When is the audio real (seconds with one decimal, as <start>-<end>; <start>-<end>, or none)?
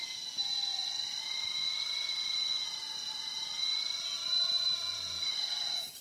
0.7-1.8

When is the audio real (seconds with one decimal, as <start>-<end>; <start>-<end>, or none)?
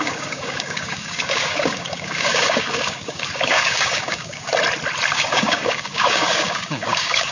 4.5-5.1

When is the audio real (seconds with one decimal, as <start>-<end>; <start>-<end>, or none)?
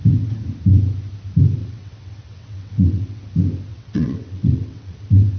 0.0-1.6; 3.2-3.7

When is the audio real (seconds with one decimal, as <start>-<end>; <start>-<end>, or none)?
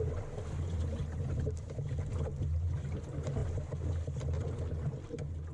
0.0-5.5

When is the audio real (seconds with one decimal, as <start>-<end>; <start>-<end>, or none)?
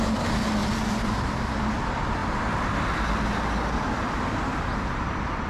0.0-0.6; 1.7-5.5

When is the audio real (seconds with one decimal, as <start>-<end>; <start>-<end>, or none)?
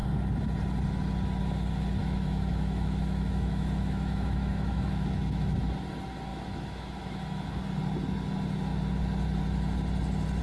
0.0-2.0; 5.6-6.3; 7.6-10.4